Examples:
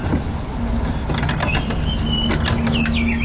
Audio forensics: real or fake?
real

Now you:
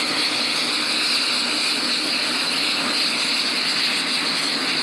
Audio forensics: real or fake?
real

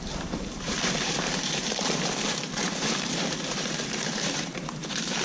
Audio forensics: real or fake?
fake